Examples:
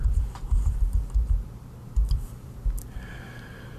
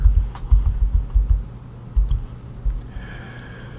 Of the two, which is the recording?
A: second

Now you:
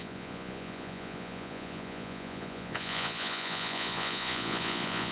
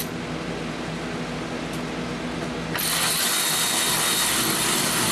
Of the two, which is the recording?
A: second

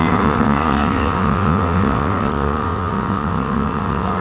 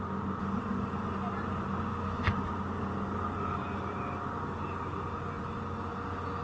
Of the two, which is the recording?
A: second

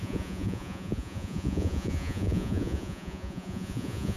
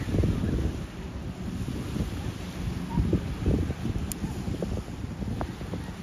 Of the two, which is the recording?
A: second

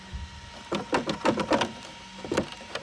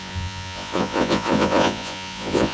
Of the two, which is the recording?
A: first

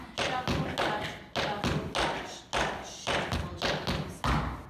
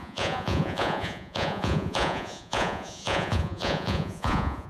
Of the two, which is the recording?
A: first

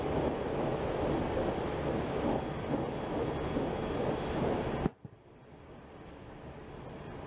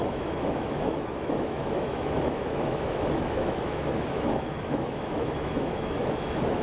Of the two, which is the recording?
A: first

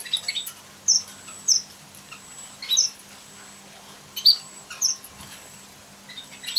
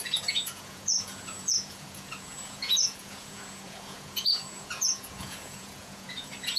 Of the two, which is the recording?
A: first